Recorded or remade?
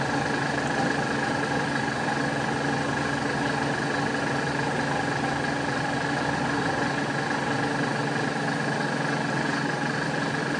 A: recorded